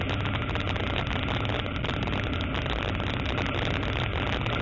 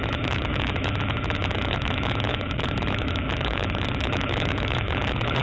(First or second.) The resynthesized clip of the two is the second